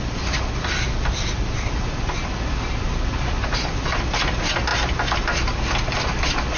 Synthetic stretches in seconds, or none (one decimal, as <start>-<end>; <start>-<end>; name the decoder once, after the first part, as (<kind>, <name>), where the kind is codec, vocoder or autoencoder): none